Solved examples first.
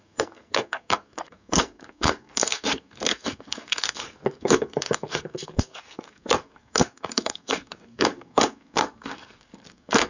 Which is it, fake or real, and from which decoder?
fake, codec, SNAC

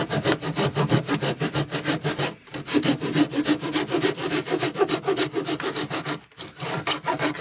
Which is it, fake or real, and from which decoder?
real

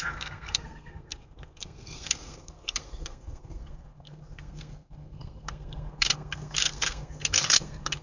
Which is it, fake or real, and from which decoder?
fake, codec, SNAC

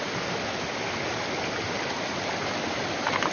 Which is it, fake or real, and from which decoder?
real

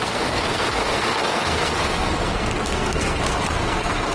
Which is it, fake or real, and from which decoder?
fake, codec, SNAC